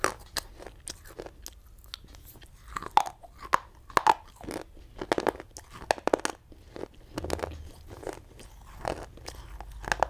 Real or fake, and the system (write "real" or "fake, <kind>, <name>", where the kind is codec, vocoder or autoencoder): real